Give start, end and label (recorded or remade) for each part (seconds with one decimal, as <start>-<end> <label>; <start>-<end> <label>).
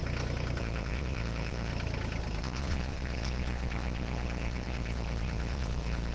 0.0-0.6 recorded; 0.6-1.7 remade; 1.7-2.4 recorded; 2.4-6.1 remade